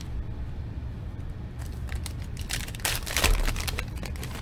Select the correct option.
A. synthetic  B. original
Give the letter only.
A